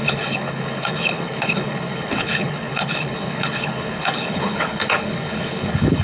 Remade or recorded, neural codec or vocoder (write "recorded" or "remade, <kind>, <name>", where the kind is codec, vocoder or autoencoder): remade, codec, HILCodec